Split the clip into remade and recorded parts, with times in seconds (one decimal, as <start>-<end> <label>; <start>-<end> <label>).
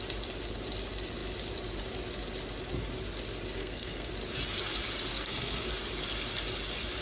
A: 0.0-3.6 recorded; 3.6-4.1 remade; 4.1-5.1 recorded; 5.1-5.7 remade; 5.7-7.0 recorded